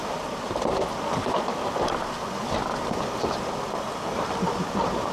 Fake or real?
real